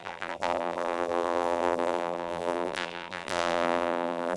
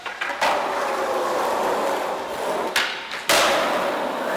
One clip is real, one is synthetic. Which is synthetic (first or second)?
first